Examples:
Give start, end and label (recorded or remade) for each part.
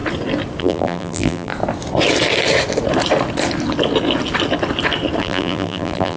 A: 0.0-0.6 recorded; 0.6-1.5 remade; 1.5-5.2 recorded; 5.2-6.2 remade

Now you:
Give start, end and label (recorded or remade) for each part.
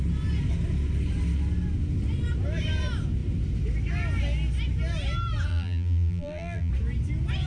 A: 0.0-5.5 recorded; 5.5-6.7 remade; 6.7-7.5 recorded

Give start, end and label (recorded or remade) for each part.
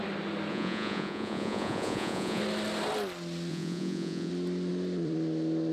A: 0.0-0.5 recorded; 0.5-2.4 remade; 2.4-3.5 recorded; 3.5-4.3 remade; 4.3-5.7 recorded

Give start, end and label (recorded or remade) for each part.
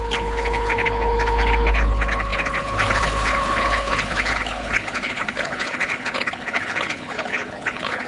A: 0.0-8.1 remade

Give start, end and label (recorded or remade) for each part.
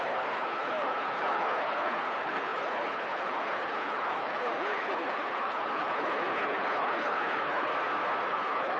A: 0.0-7.7 remade; 7.7-8.3 recorded; 8.3-8.8 remade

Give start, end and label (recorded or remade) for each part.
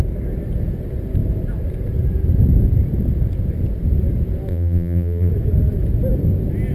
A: 0.0-4.5 recorded; 4.5-5.3 remade; 5.3-6.7 recorded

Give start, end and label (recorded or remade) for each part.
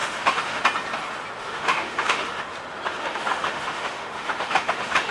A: 0.0-0.6 remade; 0.6-1.4 recorded; 1.4-2.4 remade; 2.4-3.0 recorded; 3.0-5.1 remade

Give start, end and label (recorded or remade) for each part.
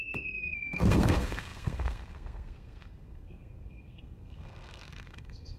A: 0.0-5.6 remade